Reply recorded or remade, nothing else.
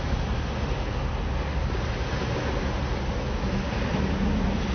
recorded